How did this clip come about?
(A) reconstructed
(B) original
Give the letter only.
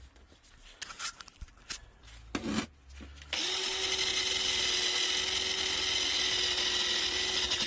B